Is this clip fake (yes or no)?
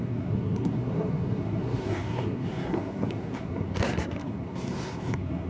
yes